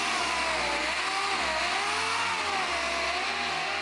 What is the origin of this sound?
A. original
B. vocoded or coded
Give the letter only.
A